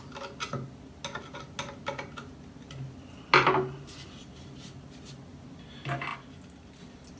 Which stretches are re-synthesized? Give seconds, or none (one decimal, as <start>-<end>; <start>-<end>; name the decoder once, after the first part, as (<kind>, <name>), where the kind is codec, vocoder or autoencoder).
none